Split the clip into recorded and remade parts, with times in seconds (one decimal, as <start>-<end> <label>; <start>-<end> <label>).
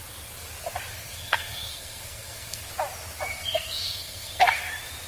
0.0-0.9 recorded; 0.9-2.7 remade; 2.7-3.3 recorded; 3.3-4.6 remade; 4.6-5.1 recorded